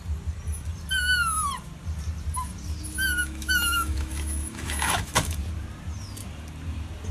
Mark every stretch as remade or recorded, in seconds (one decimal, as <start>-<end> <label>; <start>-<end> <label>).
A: 0.0-3.2 recorded; 3.2-5.4 remade; 5.4-7.1 recorded